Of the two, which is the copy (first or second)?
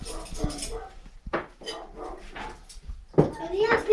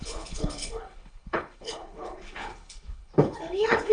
second